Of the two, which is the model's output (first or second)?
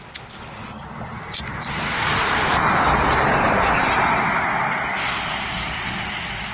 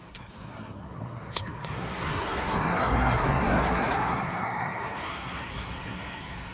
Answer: second